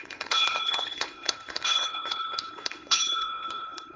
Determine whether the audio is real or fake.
fake